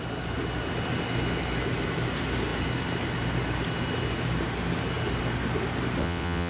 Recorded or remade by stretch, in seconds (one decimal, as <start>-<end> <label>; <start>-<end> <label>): 0.0-6.0 recorded; 6.0-6.5 remade